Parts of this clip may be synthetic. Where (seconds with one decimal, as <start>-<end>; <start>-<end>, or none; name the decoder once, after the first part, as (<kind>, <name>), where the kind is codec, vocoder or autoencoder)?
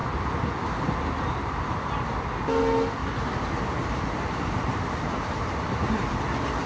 3.0-6.2 (vocoder, BigVGAN v2)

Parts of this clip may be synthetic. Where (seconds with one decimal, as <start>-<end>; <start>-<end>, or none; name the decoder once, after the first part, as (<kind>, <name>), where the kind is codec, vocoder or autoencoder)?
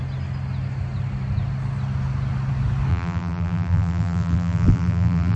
2.9-5.4 (vocoder, BigVGAN v2)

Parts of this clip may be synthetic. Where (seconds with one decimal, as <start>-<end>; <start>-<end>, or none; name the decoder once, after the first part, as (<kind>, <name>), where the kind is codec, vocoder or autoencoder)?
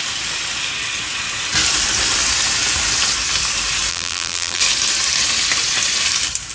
3.9-4.6 (vocoder, BigVGAN v2)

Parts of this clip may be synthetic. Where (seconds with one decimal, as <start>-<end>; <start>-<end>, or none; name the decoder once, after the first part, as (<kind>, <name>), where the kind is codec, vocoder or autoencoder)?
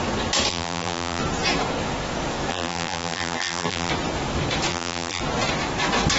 0.5-1.2 (vocoder, BigVGAN v2); 2.5-3.9; 4.7-5.2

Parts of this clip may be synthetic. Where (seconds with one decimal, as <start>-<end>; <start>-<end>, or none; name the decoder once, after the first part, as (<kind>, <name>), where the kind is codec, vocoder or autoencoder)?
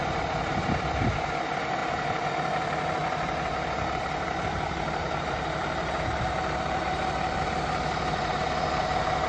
5.0-7.4 (vocoder, BigVGAN v2)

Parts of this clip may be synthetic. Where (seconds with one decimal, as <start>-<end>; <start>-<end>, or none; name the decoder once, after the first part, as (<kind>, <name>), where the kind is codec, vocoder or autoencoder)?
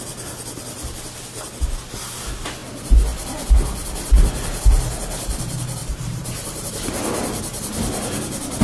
5.8-6.7 (vocoder, BigVGAN v2)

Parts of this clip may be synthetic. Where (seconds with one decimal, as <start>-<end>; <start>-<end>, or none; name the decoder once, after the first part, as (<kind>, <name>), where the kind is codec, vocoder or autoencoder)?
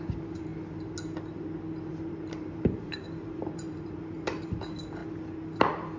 0.0-0.5 (vocoder, BigVGAN v2); 1.9-5.0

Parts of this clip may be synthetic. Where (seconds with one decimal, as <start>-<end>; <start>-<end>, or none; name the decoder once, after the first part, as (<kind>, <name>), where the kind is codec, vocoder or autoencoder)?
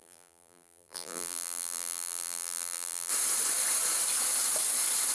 0.0-3.1 (vocoder, BigVGAN v2)